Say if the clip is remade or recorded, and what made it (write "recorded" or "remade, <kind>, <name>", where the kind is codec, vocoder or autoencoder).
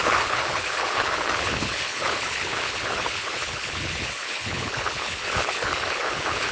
remade, codec, HILCodec